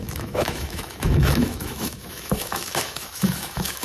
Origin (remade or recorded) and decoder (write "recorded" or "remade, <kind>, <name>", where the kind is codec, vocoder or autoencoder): remade, autoencoder, DAC-VAE